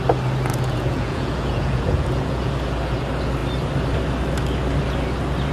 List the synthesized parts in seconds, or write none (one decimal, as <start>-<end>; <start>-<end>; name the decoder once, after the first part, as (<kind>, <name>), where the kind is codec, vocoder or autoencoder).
0.5-2.5 (vocoder, Vocos)